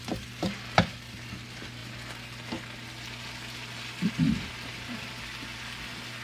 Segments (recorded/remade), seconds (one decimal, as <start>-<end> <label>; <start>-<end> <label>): 0.0-6.2 recorded